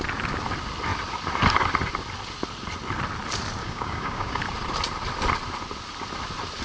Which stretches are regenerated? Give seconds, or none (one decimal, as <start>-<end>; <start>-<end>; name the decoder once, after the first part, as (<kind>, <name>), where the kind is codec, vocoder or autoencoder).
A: 3.6-4.4 (codec, DAC)